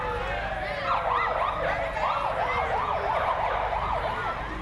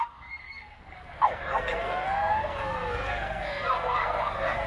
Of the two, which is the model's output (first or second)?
second